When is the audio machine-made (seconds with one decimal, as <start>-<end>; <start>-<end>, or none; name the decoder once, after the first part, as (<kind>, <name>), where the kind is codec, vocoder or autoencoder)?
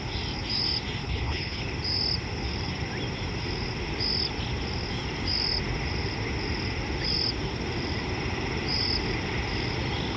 1.0-1.6 (codec, HILCodec)